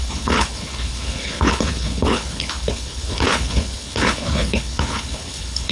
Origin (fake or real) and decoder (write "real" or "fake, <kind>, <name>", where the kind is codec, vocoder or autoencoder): fake, codec, HILCodec